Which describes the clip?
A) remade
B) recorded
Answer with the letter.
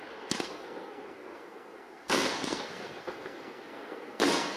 A